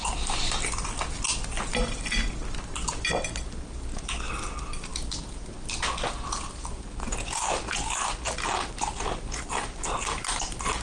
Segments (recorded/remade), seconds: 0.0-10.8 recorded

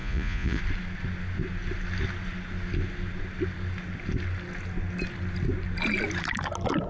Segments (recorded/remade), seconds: 0.0-0.6 remade; 0.6-6.9 recorded

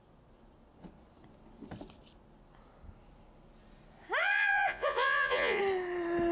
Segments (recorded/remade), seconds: 0.0-4.2 recorded; 4.2-5.6 remade; 5.6-6.3 recorded

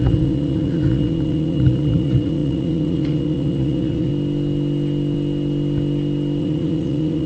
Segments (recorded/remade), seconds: 0.0-4.1 remade; 4.1-6.4 recorded; 6.4-7.3 remade

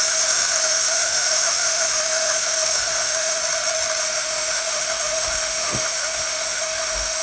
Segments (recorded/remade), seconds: 0.0-3.4 remade; 3.4-4.0 recorded; 4.0-7.2 remade

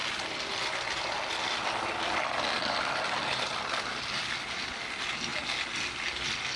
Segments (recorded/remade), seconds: 0.0-6.6 recorded